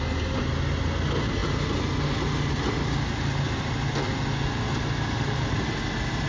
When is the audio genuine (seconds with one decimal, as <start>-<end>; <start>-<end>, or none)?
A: 0.0-6.3